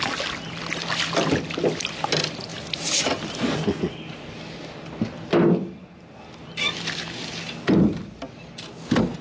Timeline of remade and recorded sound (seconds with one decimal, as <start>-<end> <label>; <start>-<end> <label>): 0.0-9.2 recorded